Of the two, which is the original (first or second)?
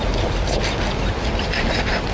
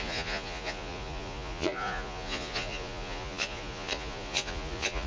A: first